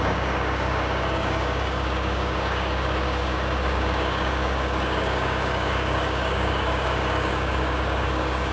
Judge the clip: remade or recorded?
remade